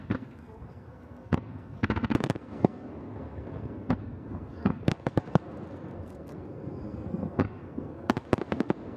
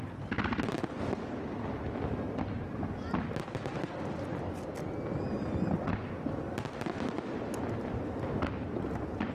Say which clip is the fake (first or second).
first